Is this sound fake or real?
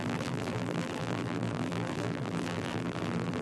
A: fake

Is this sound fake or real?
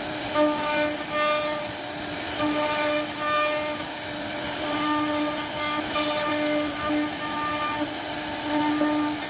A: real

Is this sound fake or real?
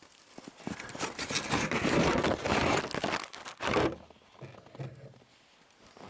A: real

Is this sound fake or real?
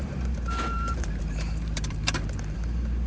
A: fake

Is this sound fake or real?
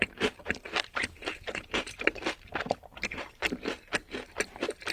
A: fake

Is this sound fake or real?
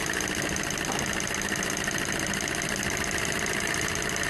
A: real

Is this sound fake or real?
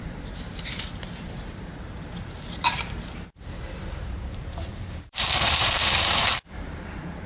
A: fake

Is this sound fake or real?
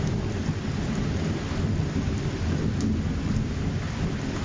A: real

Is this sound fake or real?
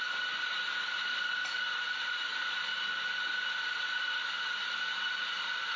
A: fake